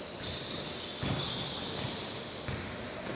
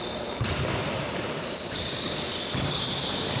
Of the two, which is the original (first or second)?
first